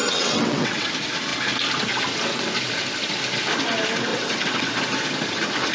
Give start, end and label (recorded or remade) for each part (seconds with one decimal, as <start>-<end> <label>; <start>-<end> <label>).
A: 0.0-0.9 remade; 0.9-4.1 recorded; 4.1-4.8 remade; 4.8-5.7 recorded